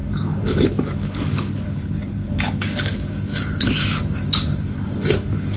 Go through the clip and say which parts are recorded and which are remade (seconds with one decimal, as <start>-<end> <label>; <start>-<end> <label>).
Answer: 0.0-5.6 remade